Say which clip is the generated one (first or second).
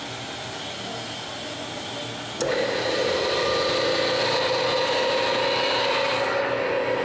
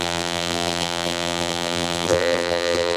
second